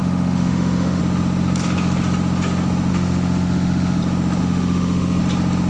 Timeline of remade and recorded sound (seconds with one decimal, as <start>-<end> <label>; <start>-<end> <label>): 0.0-1.0 remade; 1.0-2.9 recorded; 2.9-4.0 remade; 4.0-4.4 recorded; 4.4-5.2 remade; 5.2-5.7 recorded